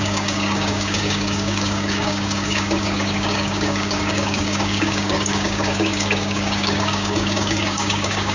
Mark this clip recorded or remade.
remade